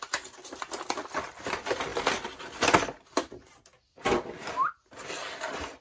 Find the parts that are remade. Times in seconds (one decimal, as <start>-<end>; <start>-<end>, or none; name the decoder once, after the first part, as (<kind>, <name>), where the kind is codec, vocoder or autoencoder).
none